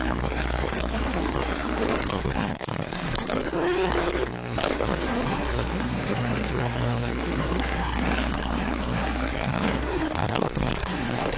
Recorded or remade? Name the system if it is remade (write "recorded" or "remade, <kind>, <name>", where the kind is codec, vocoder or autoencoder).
remade, codec, SNAC